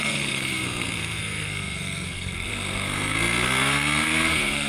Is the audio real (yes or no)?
no